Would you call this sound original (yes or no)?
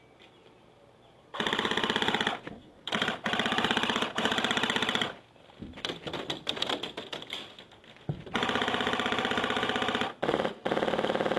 yes